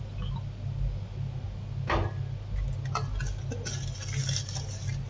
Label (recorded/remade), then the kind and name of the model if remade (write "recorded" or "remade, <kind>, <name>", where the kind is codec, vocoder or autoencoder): recorded